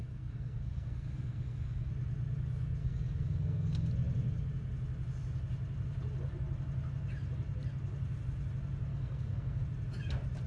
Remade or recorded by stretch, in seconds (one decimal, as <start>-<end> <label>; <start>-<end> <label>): 0.0-1.9 remade; 1.9-2.8 recorded; 2.8-3.9 remade; 3.9-8.9 recorded; 8.9-9.6 remade; 9.6-10.5 recorded